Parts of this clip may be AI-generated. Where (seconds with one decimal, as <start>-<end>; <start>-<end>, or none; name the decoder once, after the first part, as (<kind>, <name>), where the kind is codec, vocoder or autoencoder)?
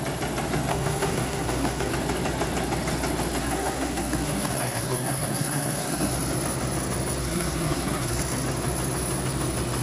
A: 0.7-1.9 (codec, SNAC); 3.4-6.1; 7.2-8.2